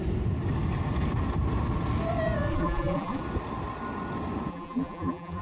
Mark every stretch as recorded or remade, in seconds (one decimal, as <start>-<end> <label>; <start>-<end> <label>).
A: 0.0-2.5 recorded; 2.5-3.2 remade; 3.2-4.5 recorded; 4.5-5.4 remade